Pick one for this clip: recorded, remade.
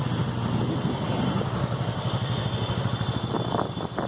recorded